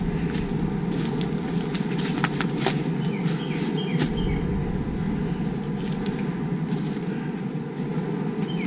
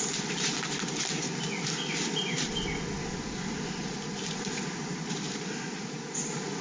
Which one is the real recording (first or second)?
first